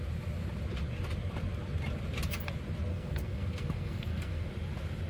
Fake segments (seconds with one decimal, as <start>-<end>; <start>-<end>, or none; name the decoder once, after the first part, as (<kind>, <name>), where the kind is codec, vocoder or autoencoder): 2.9-4.5 (codec, SNAC)